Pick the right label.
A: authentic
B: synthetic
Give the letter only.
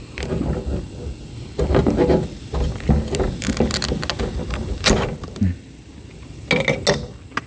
A